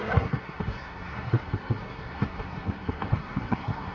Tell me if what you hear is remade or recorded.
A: remade